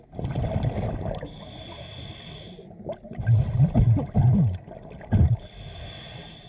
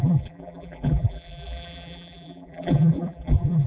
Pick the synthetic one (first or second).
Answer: second